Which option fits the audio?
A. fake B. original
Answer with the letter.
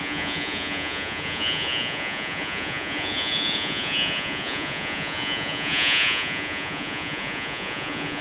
A